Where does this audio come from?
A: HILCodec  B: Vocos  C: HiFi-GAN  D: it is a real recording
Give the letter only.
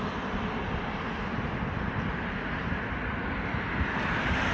D